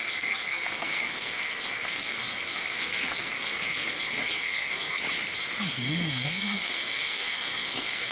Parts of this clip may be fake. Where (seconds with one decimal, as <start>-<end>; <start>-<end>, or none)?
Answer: 0.0-5.0; 5.7-8.1